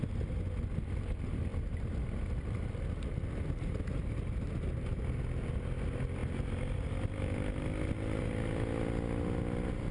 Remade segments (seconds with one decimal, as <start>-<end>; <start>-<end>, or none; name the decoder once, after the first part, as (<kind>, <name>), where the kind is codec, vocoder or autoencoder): none